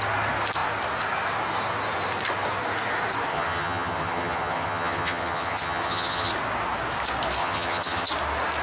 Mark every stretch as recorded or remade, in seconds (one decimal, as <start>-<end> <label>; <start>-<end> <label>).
0.0-3.3 recorded; 3.3-6.3 remade; 6.3-7.4 recorded; 7.4-8.1 remade; 8.1-8.6 recorded